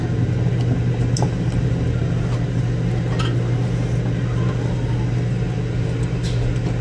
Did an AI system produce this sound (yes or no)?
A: no